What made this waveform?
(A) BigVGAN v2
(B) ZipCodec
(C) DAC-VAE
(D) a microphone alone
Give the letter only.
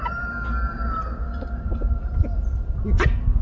D